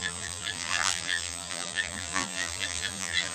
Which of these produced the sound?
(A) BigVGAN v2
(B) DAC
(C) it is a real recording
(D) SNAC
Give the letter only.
A